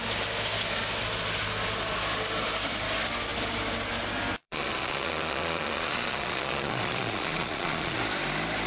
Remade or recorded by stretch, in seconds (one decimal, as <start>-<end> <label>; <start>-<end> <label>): 0.0-4.4 recorded; 4.4-8.0 remade; 8.0-8.7 recorded